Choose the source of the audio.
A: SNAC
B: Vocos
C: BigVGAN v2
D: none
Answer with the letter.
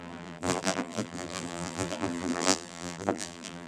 C